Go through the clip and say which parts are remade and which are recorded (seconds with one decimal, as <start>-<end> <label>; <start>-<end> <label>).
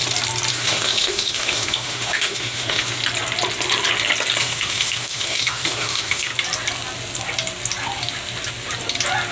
0.0-0.5 recorded; 0.5-3.0 remade; 3.0-4.4 recorded; 4.4-6.3 remade; 6.3-9.3 recorded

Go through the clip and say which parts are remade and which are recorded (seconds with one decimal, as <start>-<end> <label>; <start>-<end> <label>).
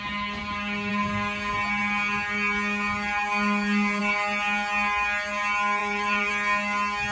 0.0-5.8 recorded; 5.8-6.3 remade; 6.3-7.1 recorded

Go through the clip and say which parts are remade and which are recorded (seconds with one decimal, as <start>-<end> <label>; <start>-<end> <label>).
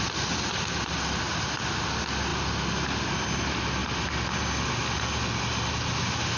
0.0-6.4 recorded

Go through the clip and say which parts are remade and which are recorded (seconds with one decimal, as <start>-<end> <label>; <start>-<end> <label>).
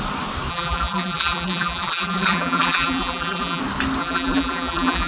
0.0-0.5 recorded; 0.5-3.6 remade; 3.6-4.0 recorded; 4.0-5.1 remade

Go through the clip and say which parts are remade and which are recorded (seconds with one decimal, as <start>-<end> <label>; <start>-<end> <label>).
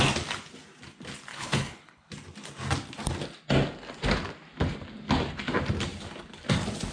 0.0-1.3 recorded; 1.3-2.1 remade; 2.1-6.9 recorded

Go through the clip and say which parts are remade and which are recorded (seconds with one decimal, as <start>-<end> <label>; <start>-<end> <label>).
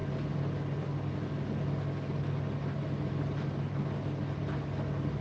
0.0-5.2 recorded